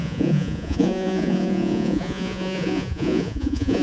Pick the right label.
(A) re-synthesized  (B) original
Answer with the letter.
A